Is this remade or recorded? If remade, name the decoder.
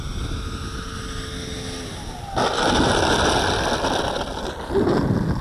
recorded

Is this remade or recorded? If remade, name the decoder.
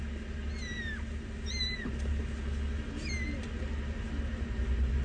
recorded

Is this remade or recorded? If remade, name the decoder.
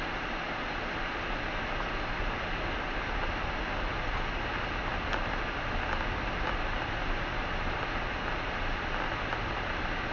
recorded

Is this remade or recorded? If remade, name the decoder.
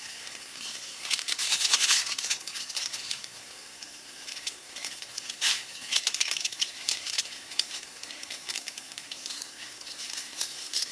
remade, codec, SNAC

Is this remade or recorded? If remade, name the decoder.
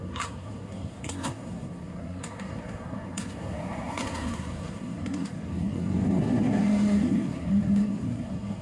remade, codec, SNAC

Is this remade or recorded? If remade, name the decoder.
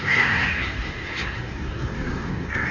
remade, codec, SNAC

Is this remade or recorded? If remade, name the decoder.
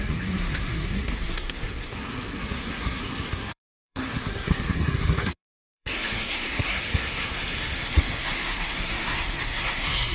remade, codec, SNAC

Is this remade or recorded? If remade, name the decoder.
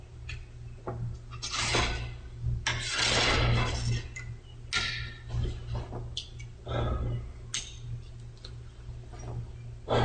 recorded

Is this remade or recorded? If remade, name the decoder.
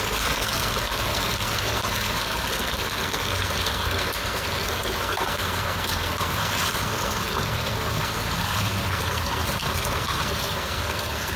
remade, codec, SNAC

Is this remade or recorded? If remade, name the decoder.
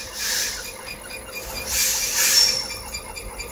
recorded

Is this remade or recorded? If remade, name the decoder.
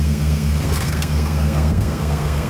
remade, codec, SNAC